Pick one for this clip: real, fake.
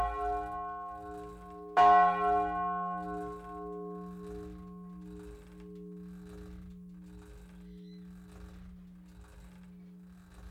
real